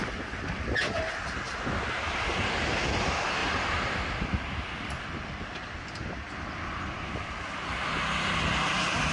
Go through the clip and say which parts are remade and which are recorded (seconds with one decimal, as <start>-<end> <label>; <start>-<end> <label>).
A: 0.0-3.4 recorded; 3.4-4.0 remade; 4.0-9.1 recorded